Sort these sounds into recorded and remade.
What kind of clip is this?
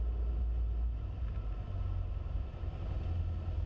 recorded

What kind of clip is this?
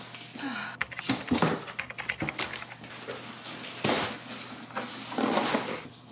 recorded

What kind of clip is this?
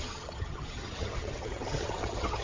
remade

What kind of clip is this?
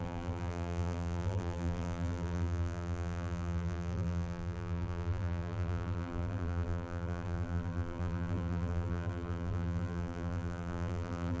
remade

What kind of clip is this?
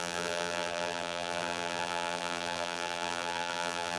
remade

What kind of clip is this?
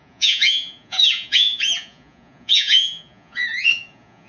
remade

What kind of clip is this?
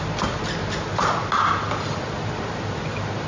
recorded